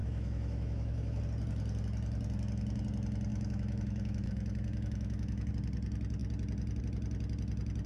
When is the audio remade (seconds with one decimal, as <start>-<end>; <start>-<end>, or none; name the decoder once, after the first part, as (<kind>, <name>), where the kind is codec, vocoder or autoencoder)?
0.0-1.2 (autoencoder, DAC-VAE); 3.3-5.5